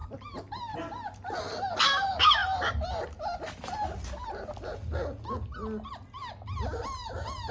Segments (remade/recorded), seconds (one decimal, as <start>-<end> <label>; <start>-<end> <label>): 0.0-7.5 recorded